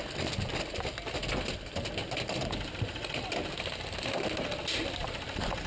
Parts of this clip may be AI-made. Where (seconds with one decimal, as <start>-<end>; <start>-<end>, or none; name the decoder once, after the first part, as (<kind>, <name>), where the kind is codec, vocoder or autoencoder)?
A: none